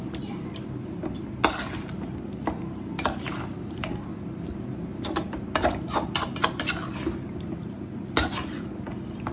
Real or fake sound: real